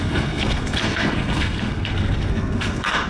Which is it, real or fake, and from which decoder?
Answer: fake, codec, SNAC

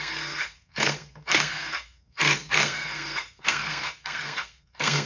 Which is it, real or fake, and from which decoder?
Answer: fake, codec, SNAC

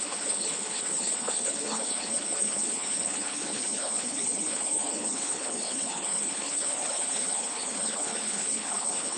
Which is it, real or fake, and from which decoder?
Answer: fake, codec, HILCodec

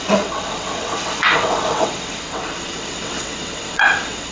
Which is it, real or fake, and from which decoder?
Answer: fake, vocoder, WaveNeXt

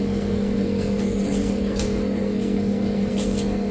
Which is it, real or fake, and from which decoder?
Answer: fake, codec, SNAC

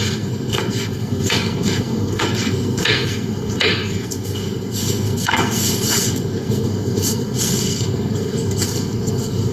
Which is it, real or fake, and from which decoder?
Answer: fake, codec, SNAC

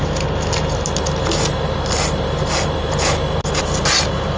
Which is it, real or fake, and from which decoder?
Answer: real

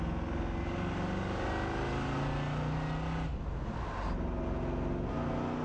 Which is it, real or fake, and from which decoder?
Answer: real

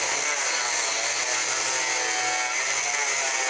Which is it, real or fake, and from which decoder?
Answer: real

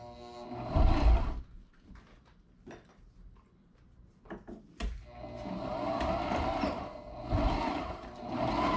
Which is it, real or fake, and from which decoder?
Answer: real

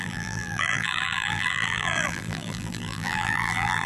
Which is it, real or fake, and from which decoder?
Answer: fake, vocoder, BigVGAN v2